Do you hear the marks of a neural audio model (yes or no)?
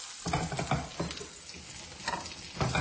no